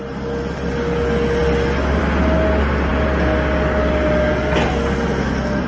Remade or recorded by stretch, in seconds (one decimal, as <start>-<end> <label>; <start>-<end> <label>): 0.0-5.7 recorded